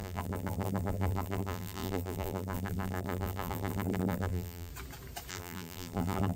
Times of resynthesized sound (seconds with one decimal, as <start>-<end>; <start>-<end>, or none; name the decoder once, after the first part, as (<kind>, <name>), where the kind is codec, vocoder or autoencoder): 0.0-4.7 (vocoder, BigVGAN v2); 5.3-6.4